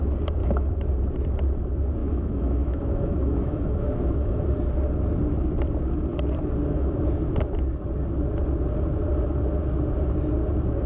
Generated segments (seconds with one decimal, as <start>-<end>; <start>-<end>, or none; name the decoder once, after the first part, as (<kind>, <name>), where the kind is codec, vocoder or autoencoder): 0.4-0.9 (autoencoder, DAC-VAE); 2.0-4.5